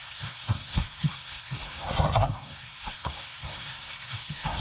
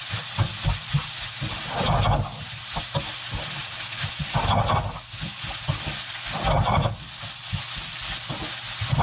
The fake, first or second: first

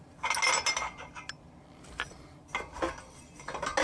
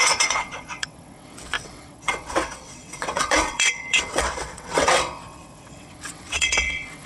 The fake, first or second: second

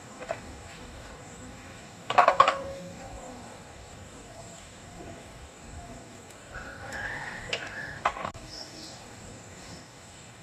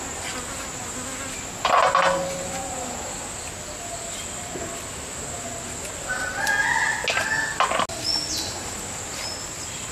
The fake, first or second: first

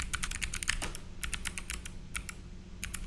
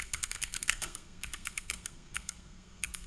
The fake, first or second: second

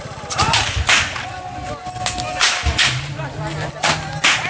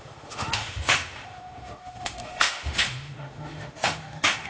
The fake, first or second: second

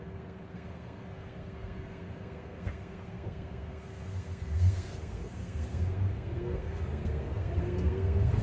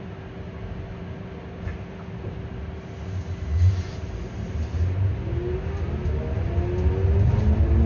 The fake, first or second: first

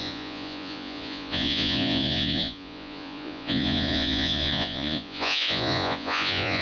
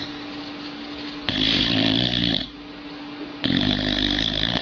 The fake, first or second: first